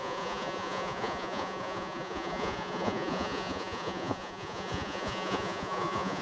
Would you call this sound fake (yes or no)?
yes